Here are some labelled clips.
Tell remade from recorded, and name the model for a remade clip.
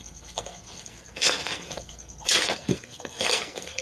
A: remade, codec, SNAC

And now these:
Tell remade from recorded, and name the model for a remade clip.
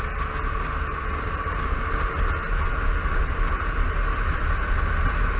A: recorded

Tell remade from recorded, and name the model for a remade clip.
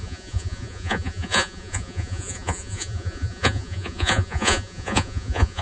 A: remade, vocoder, Vocos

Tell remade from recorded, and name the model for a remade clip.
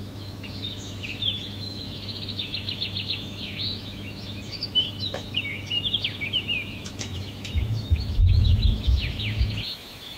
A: remade, autoencoder, DAC-VAE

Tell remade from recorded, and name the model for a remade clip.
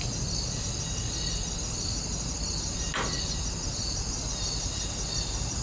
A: recorded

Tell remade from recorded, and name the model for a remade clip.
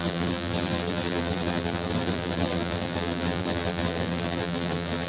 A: remade, vocoder, BigVGAN v2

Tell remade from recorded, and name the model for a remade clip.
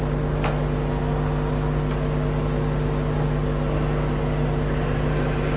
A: recorded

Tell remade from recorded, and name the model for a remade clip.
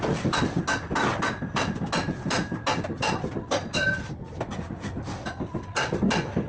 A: recorded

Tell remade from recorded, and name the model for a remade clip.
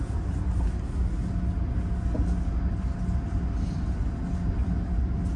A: recorded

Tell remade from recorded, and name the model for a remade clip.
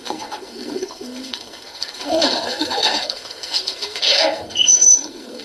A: remade, codec, SNAC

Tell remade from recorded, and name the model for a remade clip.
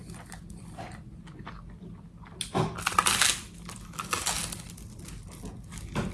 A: recorded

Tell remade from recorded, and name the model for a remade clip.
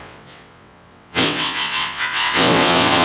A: remade, vocoder, WaveNeXt